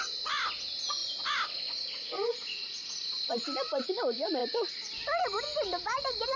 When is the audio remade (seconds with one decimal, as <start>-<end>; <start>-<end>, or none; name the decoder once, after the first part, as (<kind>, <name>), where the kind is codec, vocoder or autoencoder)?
none